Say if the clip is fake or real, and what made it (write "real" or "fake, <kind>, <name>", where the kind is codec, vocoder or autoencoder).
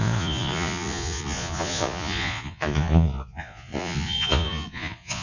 fake, vocoder, Vocos